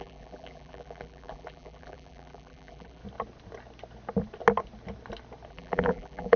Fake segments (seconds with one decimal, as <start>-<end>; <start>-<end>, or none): 0.0-3.0; 5.5-6.4